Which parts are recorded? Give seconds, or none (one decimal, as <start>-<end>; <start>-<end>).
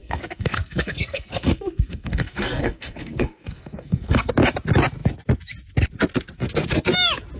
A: 4.3-7.4